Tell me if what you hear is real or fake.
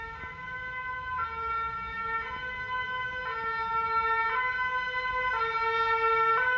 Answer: real